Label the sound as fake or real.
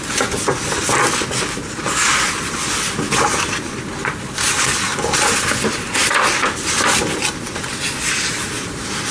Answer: real